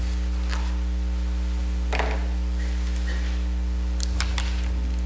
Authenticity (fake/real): real